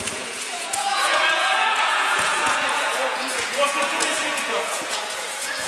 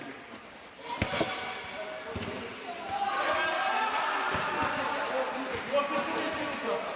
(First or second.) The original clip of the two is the second